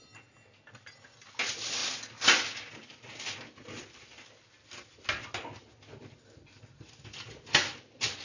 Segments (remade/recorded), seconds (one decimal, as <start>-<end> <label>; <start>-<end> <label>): 0.0-8.2 recorded